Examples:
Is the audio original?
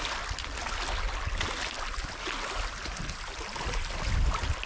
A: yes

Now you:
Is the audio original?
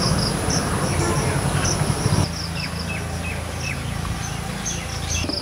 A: yes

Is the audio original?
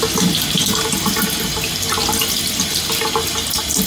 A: yes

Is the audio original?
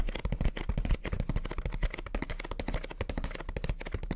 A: yes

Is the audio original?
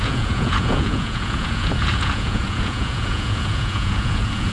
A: no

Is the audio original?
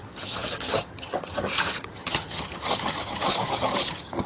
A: no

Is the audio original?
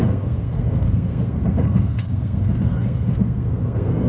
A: no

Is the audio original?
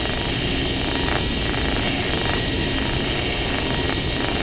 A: yes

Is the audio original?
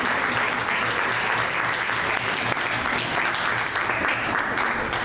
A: yes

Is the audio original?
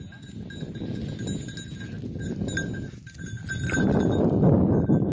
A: yes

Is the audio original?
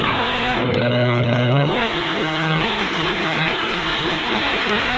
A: no